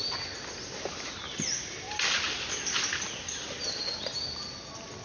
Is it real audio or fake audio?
real